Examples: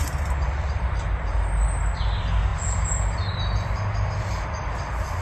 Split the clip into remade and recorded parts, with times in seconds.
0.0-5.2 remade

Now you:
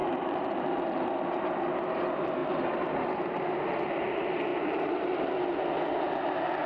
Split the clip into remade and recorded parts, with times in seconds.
0.0-0.6 remade; 0.6-4.5 recorded; 4.5-5.3 remade; 5.3-6.7 recorded

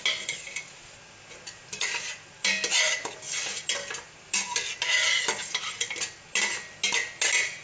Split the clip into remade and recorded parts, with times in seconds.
0.0-7.6 recorded